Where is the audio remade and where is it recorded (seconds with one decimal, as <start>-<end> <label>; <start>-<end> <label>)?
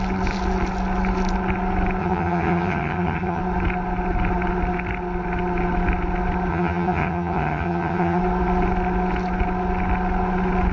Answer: 0.0-2.0 recorded; 2.0-3.4 remade; 3.4-6.5 recorded; 6.5-8.2 remade; 8.2-10.7 recorded